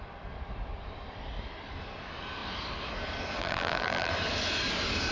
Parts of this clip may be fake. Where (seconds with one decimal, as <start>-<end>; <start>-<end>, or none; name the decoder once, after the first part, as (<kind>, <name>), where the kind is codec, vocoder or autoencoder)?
3.4-4.1 (vocoder, BigVGAN v2)